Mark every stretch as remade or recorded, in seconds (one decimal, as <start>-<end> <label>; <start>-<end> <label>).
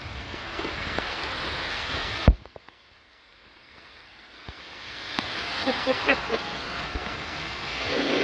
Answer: 0.0-1.2 remade; 1.2-1.7 recorded; 1.7-8.2 remade